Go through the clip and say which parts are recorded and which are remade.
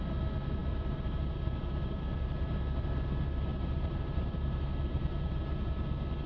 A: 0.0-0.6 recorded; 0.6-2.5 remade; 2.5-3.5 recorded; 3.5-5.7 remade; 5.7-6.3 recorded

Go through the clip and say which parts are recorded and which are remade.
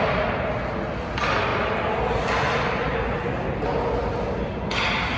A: 0.0-5.2 recorded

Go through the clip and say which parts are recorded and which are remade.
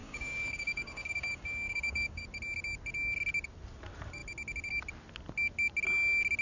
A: 0.0-2.2 remade; 2.2-6.4 recorded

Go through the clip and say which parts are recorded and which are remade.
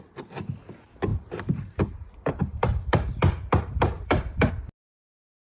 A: 0.0-1.1 recorded; 1.1-4.5 remade; 4.5-5.6 recorded